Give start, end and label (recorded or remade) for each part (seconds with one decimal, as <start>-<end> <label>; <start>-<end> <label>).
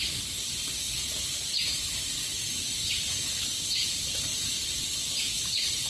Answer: 0.0-5.9 remade